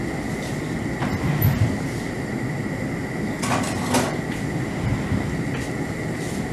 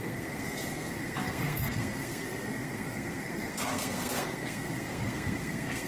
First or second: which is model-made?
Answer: second